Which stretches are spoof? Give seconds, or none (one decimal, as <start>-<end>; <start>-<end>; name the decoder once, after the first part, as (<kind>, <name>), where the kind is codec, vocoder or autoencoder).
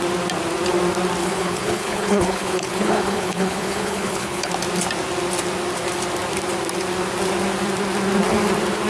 1.2-4.5 (codec, HILCodec)